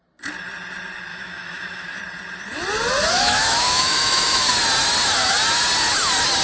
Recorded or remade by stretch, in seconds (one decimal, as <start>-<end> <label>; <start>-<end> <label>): 0.0-1.1 recorded; 1.1-2.0 remade; 2.0-3.1 recorded; 3.1-4.5 remade; 4.5-6.4 recorded